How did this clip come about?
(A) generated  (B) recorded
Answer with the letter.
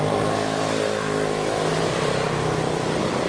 A